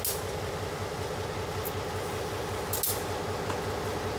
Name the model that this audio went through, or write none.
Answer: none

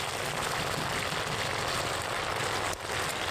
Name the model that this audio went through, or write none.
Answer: none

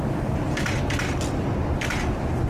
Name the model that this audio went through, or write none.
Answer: none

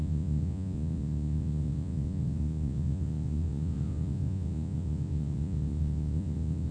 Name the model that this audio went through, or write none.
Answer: vocoder, Vocos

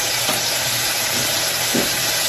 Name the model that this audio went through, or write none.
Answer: vocoder, BigVGAN v2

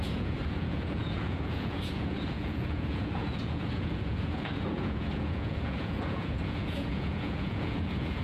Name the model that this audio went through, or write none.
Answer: vocoder, Vocos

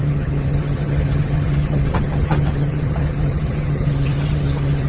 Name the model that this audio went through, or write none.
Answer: vocoder, HiFi-GAN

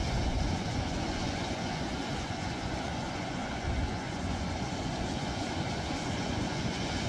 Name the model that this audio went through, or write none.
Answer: vocoder, Vocos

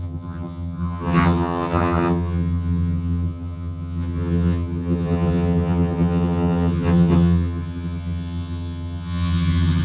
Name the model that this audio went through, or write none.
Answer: vocoder, HiFi-GAN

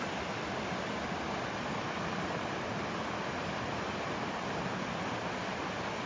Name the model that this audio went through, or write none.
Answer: none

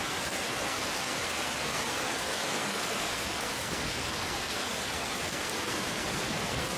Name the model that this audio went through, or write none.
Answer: codec, SNAC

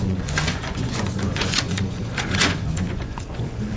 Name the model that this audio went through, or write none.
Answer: vocoder, Vocos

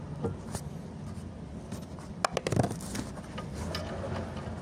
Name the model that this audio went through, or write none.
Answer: none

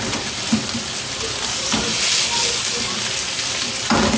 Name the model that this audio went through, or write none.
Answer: none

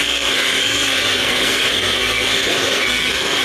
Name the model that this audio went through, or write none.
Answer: codec, SNAC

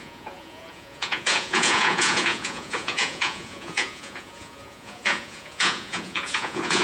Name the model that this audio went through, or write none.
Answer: vocoder, Vocos